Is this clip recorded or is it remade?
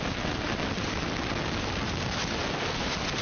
recorded